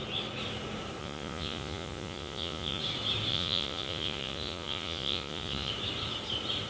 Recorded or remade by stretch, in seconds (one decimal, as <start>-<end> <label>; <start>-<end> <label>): 0.0-1.0 recorded; 1.0-2.8 remade; 2.8-3.3 recorded; 3.3-5.7 remade; 5.7-6.7 recorded